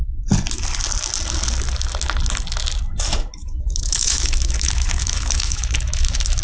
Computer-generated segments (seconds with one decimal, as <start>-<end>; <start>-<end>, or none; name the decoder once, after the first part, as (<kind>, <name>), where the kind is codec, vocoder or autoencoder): 3.4-6.4 (autoencoder, DAC-VAE)